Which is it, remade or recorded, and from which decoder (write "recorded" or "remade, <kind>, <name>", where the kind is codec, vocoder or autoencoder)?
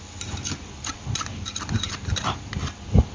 recorded